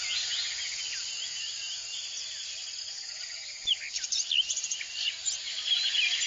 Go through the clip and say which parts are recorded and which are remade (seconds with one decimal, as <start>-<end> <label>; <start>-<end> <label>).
0.0-6.3 recorded